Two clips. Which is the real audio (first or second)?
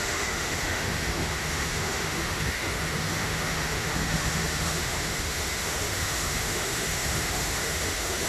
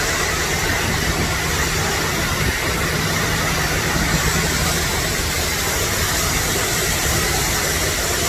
second